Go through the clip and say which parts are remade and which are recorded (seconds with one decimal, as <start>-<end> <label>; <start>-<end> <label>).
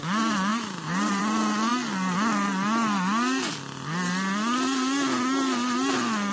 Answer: 0.0-0.5 recorded; 0.5-1.2 remade; 1.2-6.3 recorded